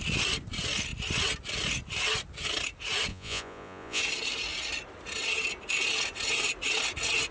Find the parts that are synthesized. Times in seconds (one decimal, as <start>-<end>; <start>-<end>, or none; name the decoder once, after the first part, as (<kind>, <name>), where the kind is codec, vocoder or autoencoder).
3.1-4.0 (vocoder, Vocos)